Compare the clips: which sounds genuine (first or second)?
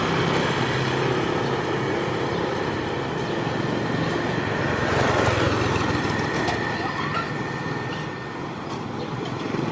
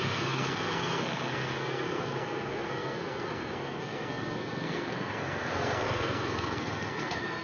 first